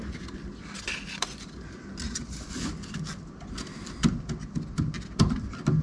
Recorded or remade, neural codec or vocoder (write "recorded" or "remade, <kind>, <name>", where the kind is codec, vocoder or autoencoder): recorded